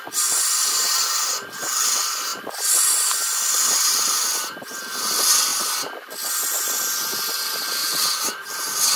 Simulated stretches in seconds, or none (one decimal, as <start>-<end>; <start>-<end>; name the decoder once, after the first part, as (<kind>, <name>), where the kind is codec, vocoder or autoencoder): 7.8-8.5 (vocoder, BigVGAN v2)